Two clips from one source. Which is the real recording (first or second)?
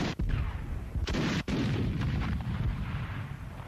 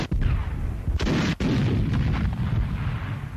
second